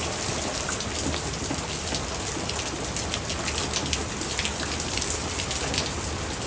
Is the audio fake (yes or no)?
no